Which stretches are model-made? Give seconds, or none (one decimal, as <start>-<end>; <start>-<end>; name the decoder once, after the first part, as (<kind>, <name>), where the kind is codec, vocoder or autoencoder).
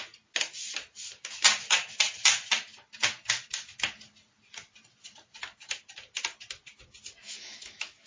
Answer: 7.2-8.1 (autoencoder, DAC-VAE)